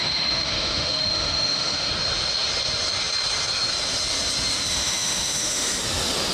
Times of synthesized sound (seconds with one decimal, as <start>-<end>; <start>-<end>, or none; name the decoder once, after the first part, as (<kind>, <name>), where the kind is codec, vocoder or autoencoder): 0.0-1.9 (autoencoder, DAC-VAE); 4.7-5.8